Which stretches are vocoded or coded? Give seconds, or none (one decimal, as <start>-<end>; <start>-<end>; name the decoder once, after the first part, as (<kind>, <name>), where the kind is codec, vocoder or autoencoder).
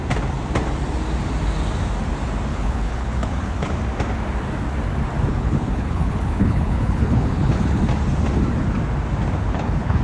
2.5-3.7 (codec, HILCodec); 5.3-7.8; 9.4-10.0